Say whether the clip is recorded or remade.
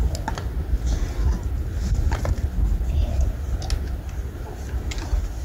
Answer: recorded